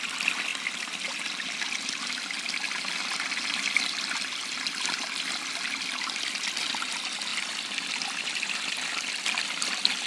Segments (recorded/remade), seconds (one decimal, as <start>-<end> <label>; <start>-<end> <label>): 0.0-10.1 recorded